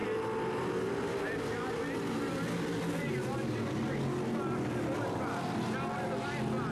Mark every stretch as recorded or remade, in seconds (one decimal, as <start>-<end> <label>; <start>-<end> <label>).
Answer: 0.0-6.7 recorded